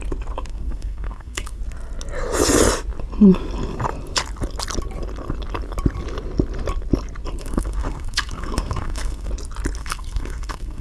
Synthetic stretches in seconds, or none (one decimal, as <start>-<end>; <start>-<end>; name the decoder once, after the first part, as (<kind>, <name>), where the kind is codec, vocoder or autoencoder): 0.5-1.6 (codec, SNAC); 7.4-9.3; 9.8-10.8